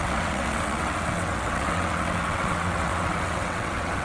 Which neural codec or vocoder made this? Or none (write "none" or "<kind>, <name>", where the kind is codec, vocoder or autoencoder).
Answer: vocoder, WaveNeXt